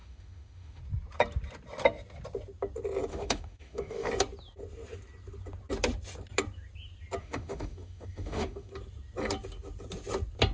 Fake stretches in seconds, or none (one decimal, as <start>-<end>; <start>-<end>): 0.0-0.8; 3.1-4.1; 7.2-8.7